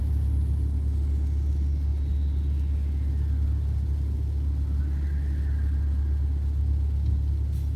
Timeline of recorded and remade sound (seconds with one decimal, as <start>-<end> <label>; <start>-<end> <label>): 0.0-7.8 recorded